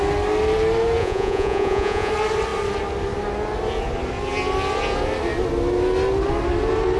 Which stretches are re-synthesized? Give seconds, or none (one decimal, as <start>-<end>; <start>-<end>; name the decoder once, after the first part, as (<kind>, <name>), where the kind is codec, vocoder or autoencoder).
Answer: 1.0-2.1 (vocoder, Vocos)